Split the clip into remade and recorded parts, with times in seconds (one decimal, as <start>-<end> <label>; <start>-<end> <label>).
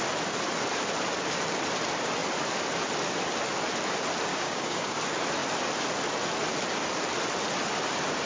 0.0-4.3 recorded; 4.3-5.0 remade; 5.0-8.3 recorded